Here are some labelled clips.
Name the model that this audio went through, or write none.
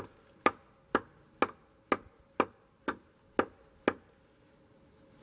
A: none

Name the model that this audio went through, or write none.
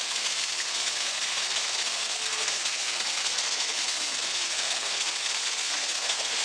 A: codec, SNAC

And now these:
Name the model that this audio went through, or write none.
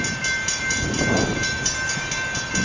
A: none